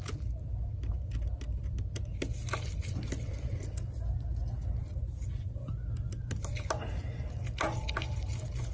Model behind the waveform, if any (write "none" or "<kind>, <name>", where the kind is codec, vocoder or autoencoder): none